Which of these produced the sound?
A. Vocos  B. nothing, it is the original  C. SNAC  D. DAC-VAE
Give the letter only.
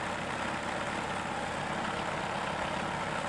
B